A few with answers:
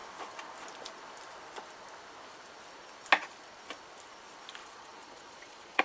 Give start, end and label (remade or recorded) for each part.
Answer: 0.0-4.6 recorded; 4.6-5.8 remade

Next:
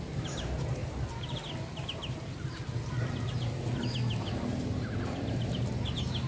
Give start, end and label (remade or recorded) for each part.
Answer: 0.0-0.8 remade; 0.8-4.6 recorded; 4.6-6.3 remade

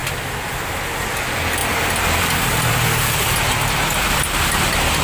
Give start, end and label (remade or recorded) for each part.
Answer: 0.0-1.6 recorded; 1.6-4.6 remade; 4.6-5.0 recorded

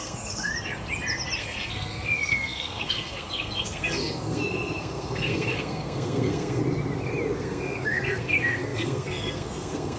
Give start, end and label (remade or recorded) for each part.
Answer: 0.0-0.5 remade; 0.5-1.4 recorded; 1.4-6.6 remade; 6.6-7.4 recorded; 7.4-10.0 remade

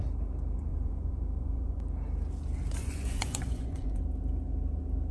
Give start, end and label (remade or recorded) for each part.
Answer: 0.0-0.7 recorded; 0.7-1.8 remade; 1.8-2.8 recorded; 2.8-4.0 remade; 4.0-5.1 recorded

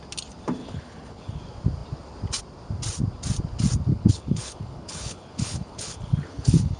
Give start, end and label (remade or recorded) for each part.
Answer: 0.0-0.6 recorded; 0.6-1.4 remade; 1.4-3.9 recorded; 3.9-6.8 remade

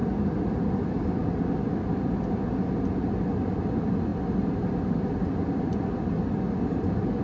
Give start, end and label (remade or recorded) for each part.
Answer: 0.0-7.2 recorded